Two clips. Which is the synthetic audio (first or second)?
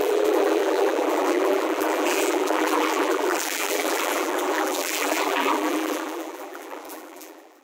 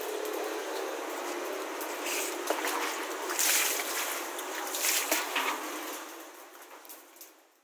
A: first